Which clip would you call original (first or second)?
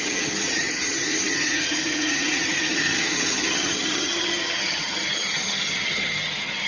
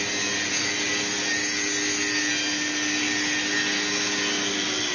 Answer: second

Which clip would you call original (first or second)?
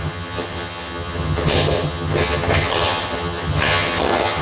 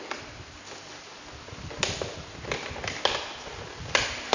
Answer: second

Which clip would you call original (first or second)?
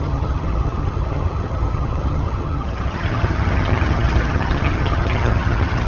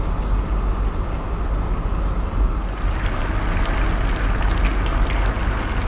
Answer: second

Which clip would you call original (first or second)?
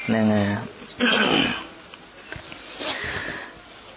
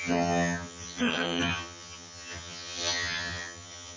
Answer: first